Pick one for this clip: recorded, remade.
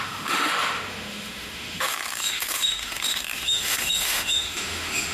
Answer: remade